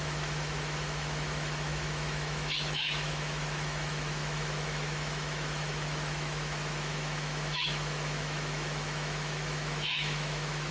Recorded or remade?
remade